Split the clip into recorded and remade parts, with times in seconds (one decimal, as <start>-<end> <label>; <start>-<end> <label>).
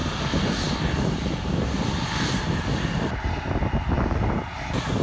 0.0-5.0 recorded